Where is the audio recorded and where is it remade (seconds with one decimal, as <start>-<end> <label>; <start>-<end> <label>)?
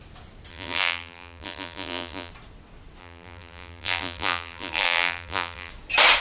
0.0-0.5 recorded; 0.5-2.3 remade; 2.3-3.0 recorded; 3.0-5.7 remade; 5.7-6.2 recorded